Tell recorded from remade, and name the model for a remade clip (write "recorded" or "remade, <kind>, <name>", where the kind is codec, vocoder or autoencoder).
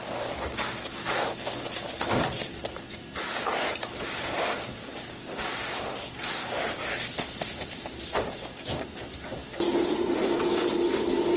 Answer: recorded